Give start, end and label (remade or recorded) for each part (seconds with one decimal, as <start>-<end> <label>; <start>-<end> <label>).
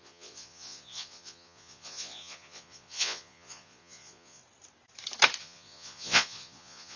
0.0-4.4 remade; 4.4-5.4 recorded; 5.4-7.0 remade